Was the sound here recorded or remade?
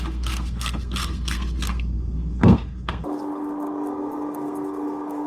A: remade